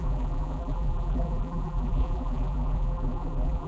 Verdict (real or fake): fake